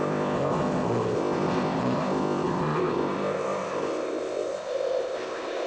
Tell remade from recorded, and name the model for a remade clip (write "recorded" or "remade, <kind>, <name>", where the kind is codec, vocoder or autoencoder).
remade, codec, ZipCodec